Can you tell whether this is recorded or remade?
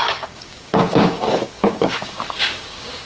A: remade